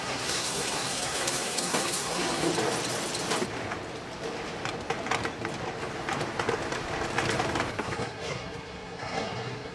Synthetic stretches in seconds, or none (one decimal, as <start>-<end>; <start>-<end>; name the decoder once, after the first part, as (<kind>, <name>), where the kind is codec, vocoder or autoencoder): 0.0-2.5 (codec, SNAC); 7.7-9.7